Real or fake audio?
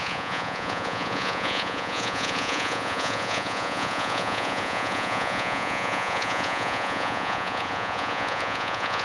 fake